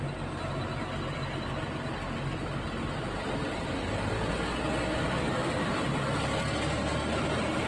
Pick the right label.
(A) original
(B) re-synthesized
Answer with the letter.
A